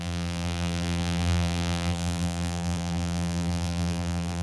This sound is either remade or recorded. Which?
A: remade